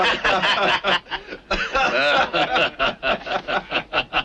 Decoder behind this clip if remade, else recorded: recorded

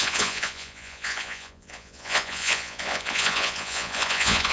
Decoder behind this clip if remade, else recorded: remade, vocoder, Vocos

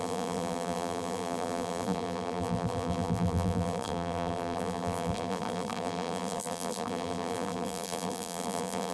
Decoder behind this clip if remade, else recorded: remade, vocoder, BigVGAN v2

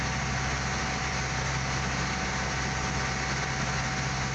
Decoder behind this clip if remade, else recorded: recorded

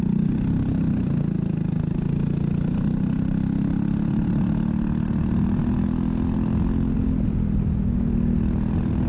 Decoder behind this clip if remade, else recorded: recorded